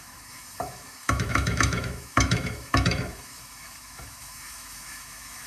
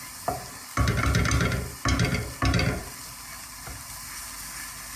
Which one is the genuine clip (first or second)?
second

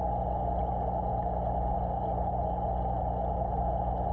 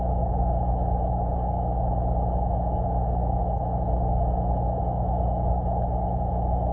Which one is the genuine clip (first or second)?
first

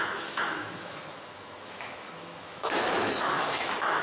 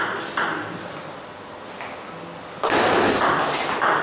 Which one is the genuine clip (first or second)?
second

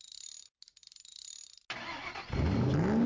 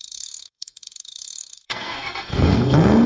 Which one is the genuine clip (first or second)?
first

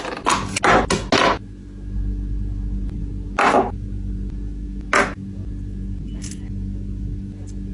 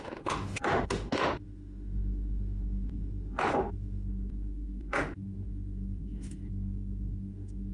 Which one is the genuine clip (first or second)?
first